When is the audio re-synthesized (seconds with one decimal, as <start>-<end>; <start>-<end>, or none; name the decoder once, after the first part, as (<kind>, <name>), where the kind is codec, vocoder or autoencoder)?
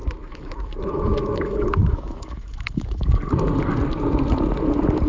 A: 0.0-3.1 (autoencoder, DAC-VAE)